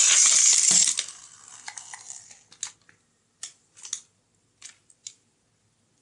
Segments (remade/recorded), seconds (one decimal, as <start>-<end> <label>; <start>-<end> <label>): 0.0-6.0 recorded